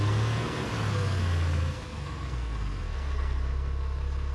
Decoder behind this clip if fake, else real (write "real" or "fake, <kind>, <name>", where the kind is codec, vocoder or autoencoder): fake, codec, SNAC